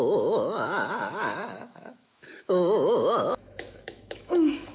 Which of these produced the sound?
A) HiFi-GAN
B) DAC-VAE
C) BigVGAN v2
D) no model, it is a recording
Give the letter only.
B